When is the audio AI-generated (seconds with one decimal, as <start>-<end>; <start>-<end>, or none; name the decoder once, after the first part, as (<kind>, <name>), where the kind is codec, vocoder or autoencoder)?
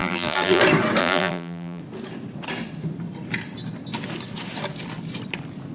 0.0-0.6 (vocoder, BigVGAN v2); 1.0-1.8